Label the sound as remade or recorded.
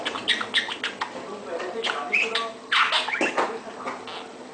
recorded